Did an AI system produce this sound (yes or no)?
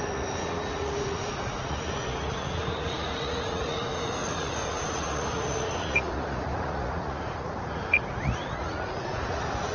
yes